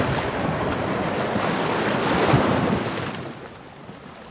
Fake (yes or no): no